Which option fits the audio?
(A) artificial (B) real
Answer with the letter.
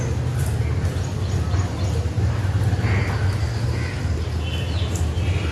B